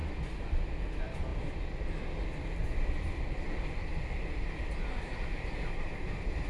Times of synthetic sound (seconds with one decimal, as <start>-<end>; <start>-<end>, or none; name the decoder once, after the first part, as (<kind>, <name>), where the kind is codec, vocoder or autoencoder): 1.3-5.2 (vocoder, BigVGAN v2)